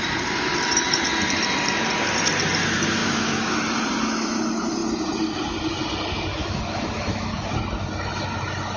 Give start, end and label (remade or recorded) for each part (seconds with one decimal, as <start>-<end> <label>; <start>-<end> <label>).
0.0-3.0 recorded; 3.0-3.6 remade; 3.6-6.3 recorded; 6.3-7.5 remade; 7.5-8.8 recorded